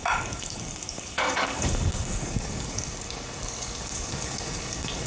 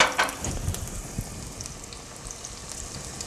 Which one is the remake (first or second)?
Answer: first